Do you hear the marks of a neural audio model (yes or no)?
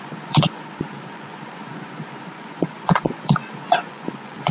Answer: yes